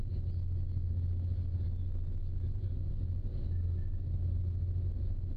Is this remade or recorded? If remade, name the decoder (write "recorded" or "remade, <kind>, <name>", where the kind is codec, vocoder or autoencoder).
recorded